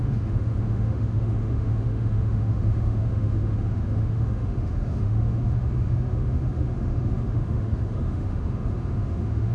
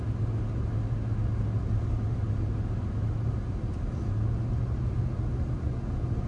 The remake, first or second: first